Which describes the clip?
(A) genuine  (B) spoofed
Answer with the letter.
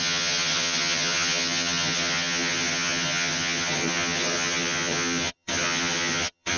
B